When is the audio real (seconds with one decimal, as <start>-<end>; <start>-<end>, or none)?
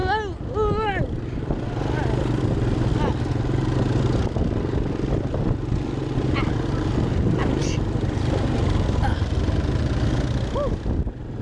0.0-11.4